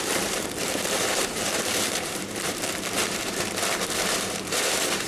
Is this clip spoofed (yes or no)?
yes